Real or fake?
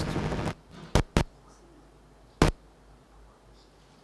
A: real